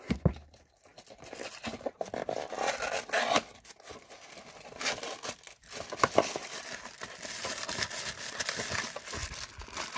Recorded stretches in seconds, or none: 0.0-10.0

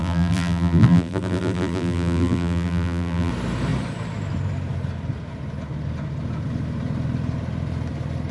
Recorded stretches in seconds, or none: 3.3-8.3

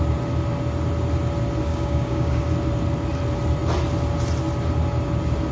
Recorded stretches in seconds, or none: 0.0-1.7; 2.4-5.5

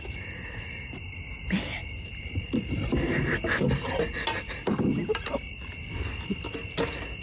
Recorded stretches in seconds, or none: 0.0-2.1; 2.9-7.2

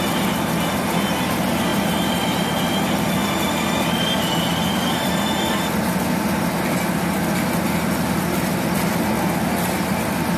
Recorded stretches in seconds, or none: 0.0-10.4

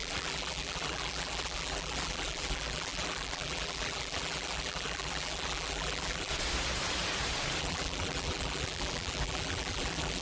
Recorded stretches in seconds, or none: 6.3-7.6

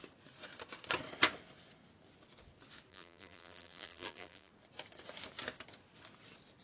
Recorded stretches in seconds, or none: 0.0-2.9; 4.5-6.6

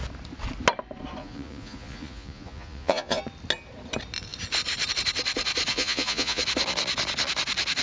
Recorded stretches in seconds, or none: 0.0-1.2; 3.2-5.7; 6.4-7.8